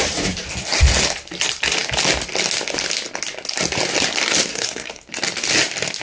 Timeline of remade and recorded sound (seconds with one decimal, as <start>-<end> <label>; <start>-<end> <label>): 0.0-4.5 recorded; 4.5-5.1 remade; 5.1-6.0 recorded